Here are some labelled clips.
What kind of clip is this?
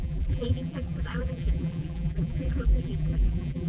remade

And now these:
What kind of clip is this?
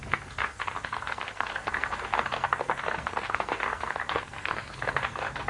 remade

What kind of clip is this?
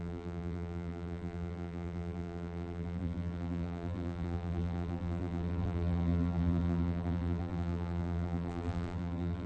remade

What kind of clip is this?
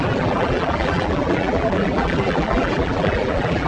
remade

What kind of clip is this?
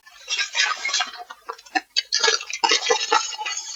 recorded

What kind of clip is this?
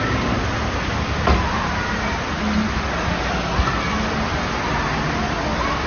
recorded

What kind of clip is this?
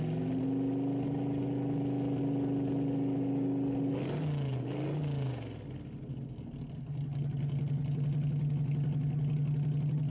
recorded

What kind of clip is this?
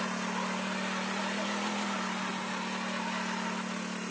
recorded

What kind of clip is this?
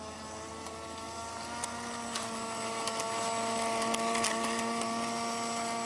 recorded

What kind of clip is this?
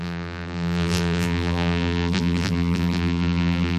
remade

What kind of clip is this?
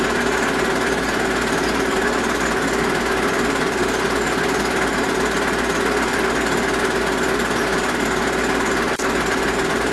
recorded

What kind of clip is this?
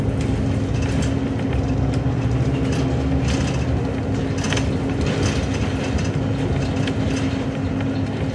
recorded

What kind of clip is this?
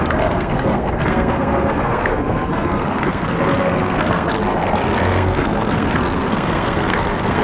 remade